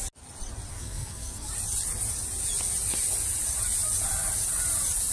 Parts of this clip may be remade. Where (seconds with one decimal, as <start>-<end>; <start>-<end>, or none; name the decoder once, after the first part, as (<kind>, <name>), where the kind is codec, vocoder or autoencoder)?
0.7-1.5 (codec, SNAC)